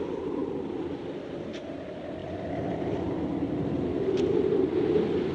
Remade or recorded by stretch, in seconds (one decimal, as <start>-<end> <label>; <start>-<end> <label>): 0.0-2.2 recorded; 2.2-3.3 remade; 3.3-5.3 recorded